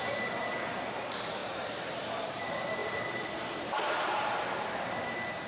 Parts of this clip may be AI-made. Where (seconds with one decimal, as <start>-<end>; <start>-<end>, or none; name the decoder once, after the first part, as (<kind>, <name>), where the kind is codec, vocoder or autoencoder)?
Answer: 1.4-2.1 (vocoder, BigVGAN v2); 2.8-4.3